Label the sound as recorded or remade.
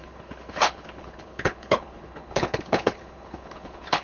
remade